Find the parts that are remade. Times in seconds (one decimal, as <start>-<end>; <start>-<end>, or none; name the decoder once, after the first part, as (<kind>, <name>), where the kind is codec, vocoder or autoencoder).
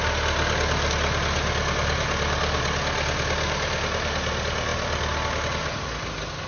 none